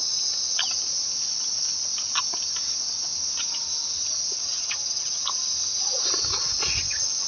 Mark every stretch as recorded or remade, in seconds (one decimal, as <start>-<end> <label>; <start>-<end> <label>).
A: 0.0-7.3 recorded